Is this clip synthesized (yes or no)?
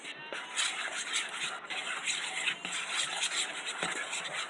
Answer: no